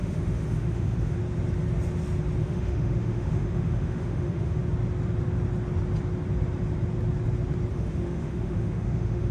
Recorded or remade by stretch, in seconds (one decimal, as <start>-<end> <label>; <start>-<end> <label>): 0.0-1.2 remade; 1.2-2.4 recorded; 2.4-4.6 remade; 4.6-7.7 recorded; 7.7-9.3 remade